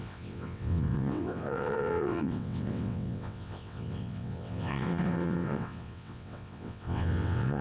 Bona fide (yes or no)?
no